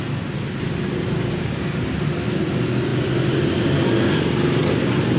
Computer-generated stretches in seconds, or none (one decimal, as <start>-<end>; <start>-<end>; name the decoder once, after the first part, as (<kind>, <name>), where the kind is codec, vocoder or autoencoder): none

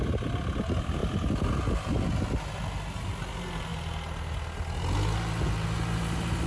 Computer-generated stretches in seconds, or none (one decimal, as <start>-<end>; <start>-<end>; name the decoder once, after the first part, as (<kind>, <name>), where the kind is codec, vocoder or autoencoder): none

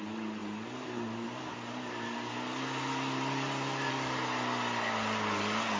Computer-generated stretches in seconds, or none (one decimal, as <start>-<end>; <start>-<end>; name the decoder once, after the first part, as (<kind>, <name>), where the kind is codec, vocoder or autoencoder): none

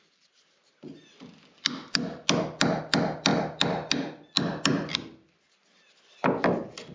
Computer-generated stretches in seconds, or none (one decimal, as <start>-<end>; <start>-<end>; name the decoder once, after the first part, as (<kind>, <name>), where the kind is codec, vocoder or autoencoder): none

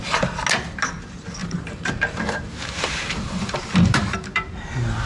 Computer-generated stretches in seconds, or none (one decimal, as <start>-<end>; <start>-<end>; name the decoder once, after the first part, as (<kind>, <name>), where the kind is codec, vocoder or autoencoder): 1.4-4.5 (vocoder, BigVGAN v2)